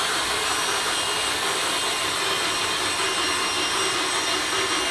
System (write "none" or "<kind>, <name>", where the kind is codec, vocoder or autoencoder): none